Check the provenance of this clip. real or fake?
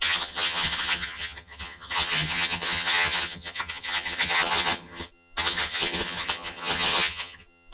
fake